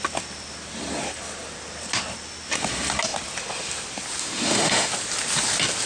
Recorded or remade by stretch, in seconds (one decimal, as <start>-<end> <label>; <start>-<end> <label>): 0.0-4.2 recorded; 4.2-4.9 remade; 4.9-5.9 recorded